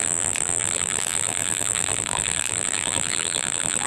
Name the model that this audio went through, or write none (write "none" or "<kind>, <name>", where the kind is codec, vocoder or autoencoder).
vocoder, BigVGAN v2